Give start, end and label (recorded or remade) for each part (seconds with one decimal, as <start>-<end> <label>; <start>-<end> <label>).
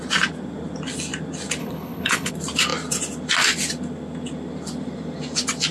0.0-1.6 recorded; 1.6-2.3 remade; 2.3-5.7 recorded